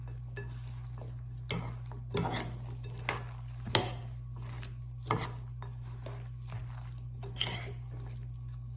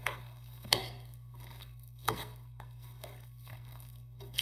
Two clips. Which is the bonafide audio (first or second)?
first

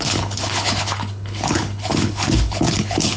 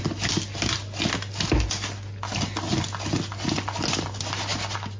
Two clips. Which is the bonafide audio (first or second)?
second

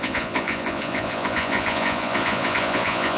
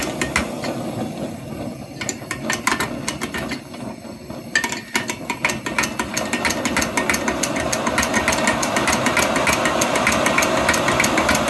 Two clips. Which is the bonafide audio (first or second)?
second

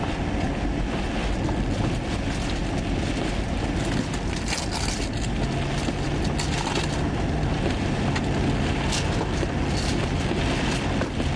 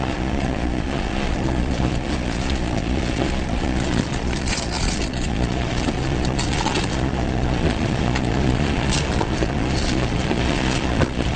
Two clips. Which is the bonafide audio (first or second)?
first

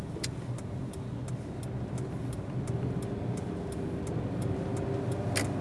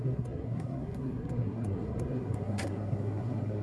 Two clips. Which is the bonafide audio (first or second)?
first